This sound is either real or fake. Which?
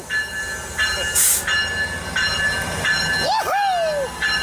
real